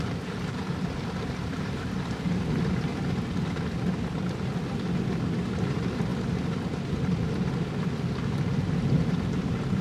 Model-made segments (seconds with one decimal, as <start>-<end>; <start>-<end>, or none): 0.0-2.9; 5.4-6.1; 8.5-9.8